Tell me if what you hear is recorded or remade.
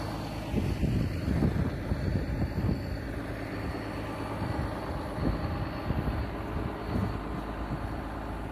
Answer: recorded